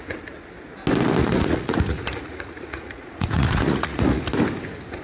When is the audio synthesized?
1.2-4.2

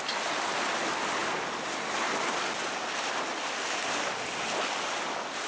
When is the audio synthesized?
none

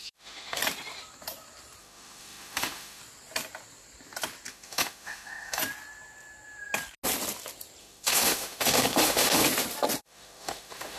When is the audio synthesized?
0.0-0.6; 1.8-3.0; 4.5-5.6; 7.8-9.4; 10.0-11.0

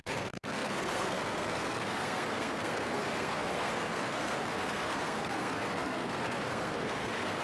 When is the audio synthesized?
0.0-7.4

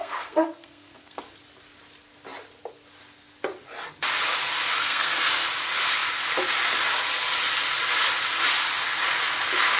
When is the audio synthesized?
0.0-1.2; 4.8-5.3